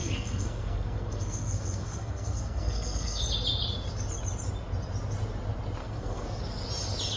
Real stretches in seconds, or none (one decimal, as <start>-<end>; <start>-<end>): 3.2-5.8; 6.4-7.2